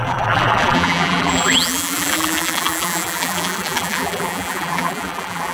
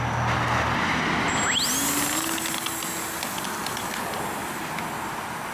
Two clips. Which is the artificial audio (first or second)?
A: first